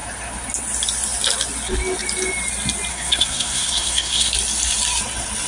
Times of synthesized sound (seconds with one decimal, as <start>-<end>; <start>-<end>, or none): 2.9-4.3

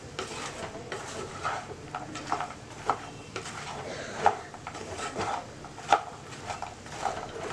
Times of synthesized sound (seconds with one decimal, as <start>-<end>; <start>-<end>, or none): 1.4-2.8; 3.2-5.3

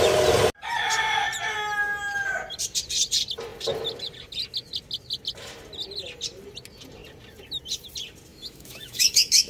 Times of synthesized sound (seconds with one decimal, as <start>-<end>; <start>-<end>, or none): 8.3-9.5

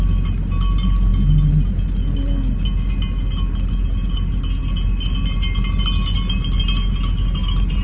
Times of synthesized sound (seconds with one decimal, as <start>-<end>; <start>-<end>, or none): none

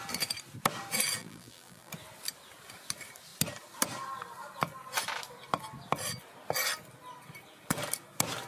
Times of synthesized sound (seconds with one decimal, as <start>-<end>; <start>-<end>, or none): 1.2-1.9